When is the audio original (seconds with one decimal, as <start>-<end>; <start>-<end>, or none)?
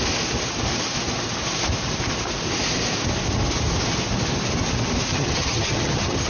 0.0-5.1